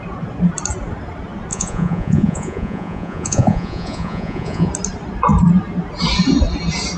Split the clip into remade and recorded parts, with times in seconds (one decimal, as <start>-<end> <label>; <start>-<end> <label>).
0.0-1.5 recorded; 1.5-4.7 remade; 4.7-7.0 recorded